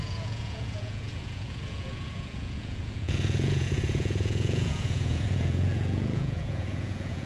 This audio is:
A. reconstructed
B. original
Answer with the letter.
A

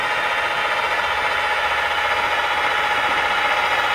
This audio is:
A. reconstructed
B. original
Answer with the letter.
B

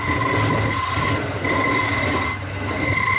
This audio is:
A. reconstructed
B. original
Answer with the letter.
B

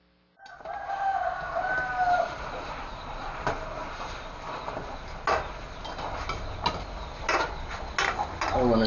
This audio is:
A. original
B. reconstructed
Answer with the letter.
A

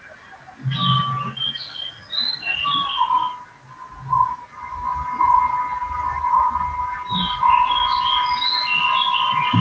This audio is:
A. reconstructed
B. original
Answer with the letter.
B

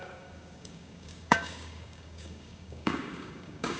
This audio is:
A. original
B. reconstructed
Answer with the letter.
B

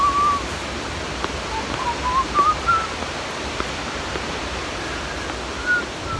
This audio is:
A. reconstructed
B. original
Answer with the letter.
B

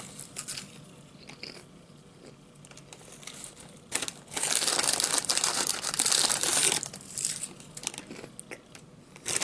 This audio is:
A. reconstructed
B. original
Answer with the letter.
B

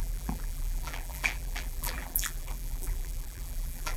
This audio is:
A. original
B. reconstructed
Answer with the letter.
B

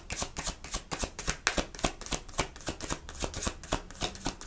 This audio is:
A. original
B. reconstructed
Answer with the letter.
A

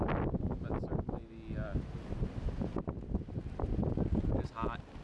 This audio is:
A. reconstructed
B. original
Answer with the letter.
B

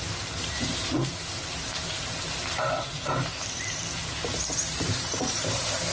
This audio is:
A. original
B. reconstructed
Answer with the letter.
B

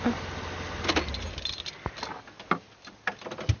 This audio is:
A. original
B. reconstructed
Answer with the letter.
A